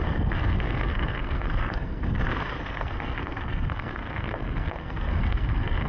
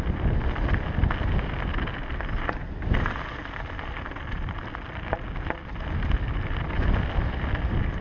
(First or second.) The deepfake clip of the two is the first